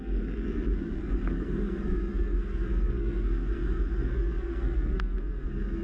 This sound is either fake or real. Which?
fake